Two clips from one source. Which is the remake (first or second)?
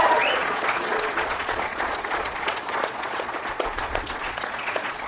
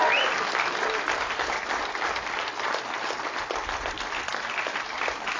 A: first